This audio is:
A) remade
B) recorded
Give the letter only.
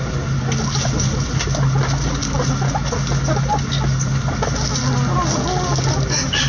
B